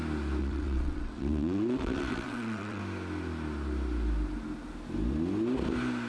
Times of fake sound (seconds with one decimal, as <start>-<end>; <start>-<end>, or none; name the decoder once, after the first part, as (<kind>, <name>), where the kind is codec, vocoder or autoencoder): 0.4-2.8 (vocoder, WaveNeXt)